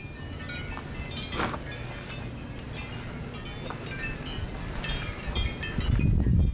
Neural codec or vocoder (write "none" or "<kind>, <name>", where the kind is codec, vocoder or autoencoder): none